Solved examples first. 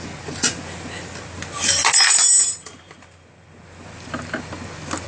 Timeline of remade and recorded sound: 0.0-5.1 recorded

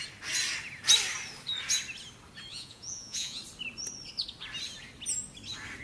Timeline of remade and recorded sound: 0.0-2.5 recorded; 2.5-3.4 remade; 3.4-5.8 recorded

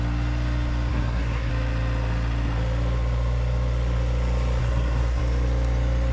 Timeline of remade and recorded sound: 0.0-0.9 recorded; 0.9-1.5 remade; 1.5-4.6 recorded; 4.6-5.2 remade; 5.2-6.1 recorded

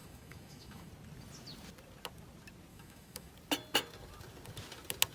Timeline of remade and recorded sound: 0.0-0.9 remade; 0.9-2.7 recorded; 2.7-3.3 remade; 3.3-5.1 recorded